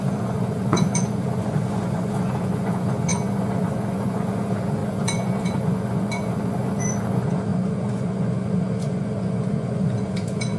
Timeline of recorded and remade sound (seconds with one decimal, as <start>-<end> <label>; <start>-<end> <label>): 0.0-10.6 remade